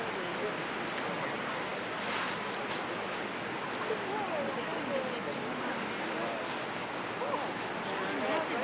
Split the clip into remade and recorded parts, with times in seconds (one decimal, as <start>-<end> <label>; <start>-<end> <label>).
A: 0.0-8.6 recorded